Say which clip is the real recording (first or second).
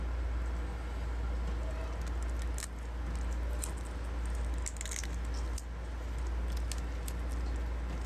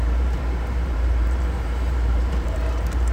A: first